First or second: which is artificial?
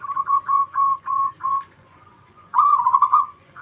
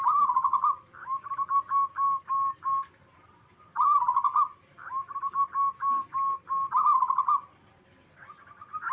first